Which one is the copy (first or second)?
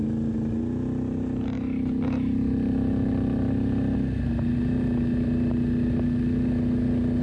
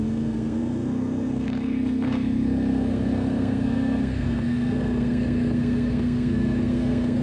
second